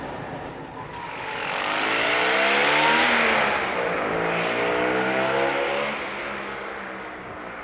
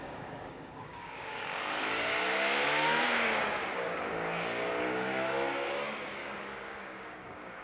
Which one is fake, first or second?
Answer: second